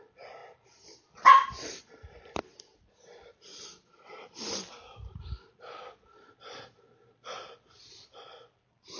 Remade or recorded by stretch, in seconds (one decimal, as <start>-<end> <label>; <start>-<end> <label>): 0.0-9.0 recorded